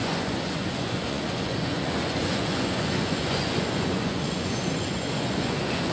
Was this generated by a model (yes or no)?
yes